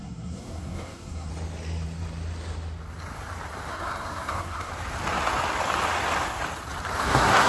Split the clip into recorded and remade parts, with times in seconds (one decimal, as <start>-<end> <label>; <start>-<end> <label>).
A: 0.0-1.3 remade; 1.3-3.7 recorded; 3.7-4.7 remade; 4.7-7.0 recorded; 7.0-7.5 remade